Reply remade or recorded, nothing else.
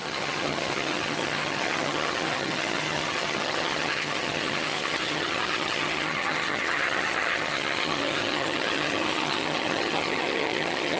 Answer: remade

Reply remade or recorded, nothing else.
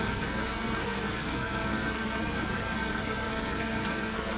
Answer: remade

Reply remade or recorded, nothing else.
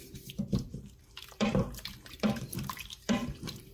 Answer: remade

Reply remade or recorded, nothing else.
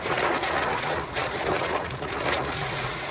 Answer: remade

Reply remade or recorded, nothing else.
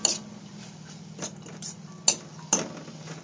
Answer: recorded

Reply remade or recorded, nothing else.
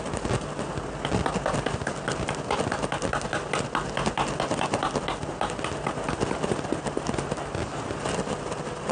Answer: recorded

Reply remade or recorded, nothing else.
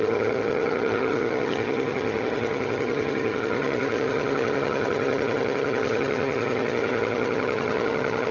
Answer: remade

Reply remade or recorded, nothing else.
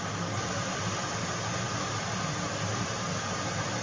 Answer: recorded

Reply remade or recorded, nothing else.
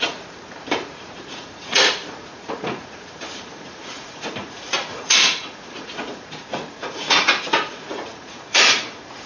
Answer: remade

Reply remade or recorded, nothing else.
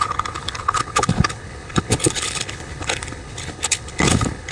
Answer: remade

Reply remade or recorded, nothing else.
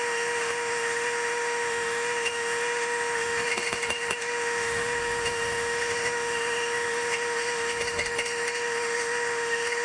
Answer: remade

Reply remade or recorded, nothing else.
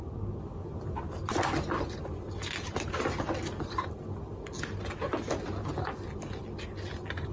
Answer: recorded